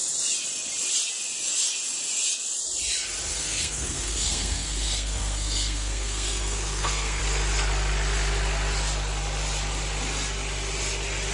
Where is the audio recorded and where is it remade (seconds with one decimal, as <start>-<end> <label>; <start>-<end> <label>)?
0.0-3.3 recorded; 3.3-7.2 remade; 7.2-11.3 recorded